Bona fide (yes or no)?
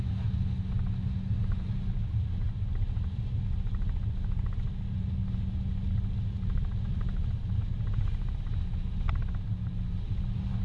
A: yes